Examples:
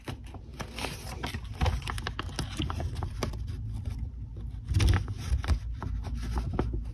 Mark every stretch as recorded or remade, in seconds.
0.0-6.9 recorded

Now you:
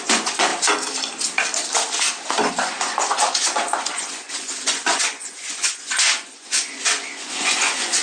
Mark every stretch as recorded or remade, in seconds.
0.0-0.5 remade; 0.5-2.5 recorded; 2.5-8.0 remade

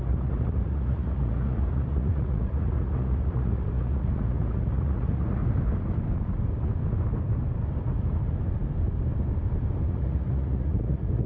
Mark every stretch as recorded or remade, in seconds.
0.0-5.4 remade; 5.4-9.9 recorded; 9.9-11.3 remade

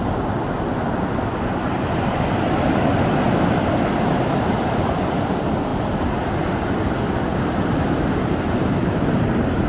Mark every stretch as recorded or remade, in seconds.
0.0-9.7 recorded

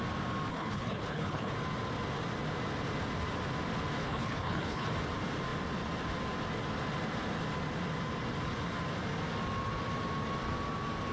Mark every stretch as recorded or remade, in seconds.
0.0-0.5 recorded; 0.5-1.5 remade; 1.5-4.0 recorded; 4.0-4.9 remade; 4.9-11.1 recorded

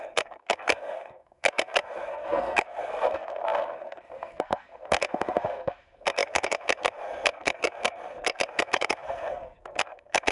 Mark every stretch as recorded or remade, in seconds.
0.0-10.3 remade

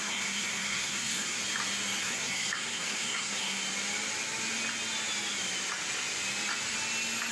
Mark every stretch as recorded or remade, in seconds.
0.0-1.4 remade; 1.4-2.0 recorded; 2.0-3.6 remade; 3.6-7.3 recorded

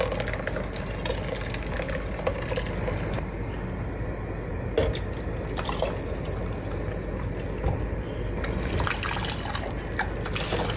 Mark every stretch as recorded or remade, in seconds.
0.0-10.8 recorded